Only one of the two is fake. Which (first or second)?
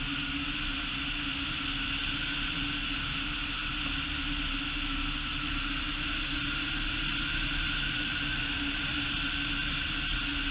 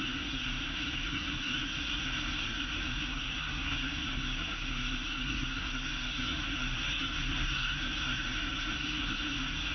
second